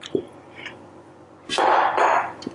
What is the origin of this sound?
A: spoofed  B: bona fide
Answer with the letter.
A